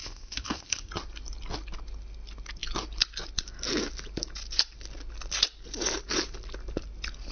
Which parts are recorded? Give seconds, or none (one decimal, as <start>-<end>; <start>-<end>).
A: 0.9-7.3